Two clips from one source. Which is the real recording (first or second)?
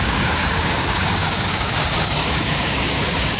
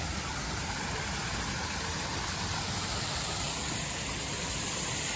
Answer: second